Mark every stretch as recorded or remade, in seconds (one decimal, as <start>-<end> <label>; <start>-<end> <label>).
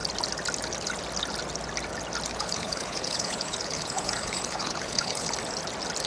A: 0.0-2.3 recorded; 2.3-5.3 remade; 5.3-6.1 recorded